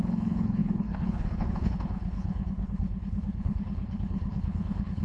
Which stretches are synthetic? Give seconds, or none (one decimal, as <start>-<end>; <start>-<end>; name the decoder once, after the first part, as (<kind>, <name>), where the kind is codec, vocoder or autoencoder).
0.0-5.0 (codec, HILCodec)